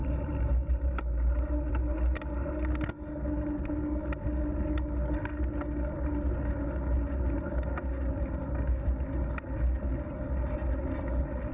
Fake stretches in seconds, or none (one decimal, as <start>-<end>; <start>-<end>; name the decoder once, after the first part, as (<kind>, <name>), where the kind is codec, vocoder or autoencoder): 0.0-1.7 (vocoder, BigVGAN v2)

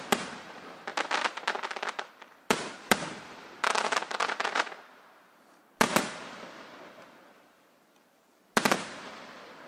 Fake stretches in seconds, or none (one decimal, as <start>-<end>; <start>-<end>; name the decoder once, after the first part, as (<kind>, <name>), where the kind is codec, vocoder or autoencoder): 0.0-0.9 (vocoder, BigVGAN v2); 1.9-9.7

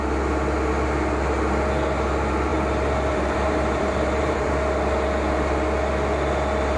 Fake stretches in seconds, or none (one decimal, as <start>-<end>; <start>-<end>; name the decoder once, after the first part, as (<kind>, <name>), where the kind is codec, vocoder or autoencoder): 2.5-4.5 (vocoder, BigVGAN v2)